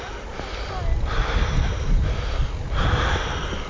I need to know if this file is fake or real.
real